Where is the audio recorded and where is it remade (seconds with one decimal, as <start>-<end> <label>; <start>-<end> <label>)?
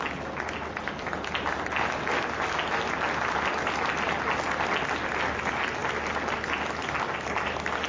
0.0-7.9 recorded